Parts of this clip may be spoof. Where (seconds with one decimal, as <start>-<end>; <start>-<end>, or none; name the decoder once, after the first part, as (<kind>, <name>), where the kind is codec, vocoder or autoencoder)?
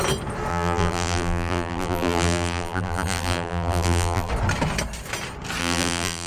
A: 0.5-4.3 (vocoder, BigVGAN v2); 5.6-6.3